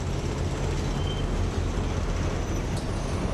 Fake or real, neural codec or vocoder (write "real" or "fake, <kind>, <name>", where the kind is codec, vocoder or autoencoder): real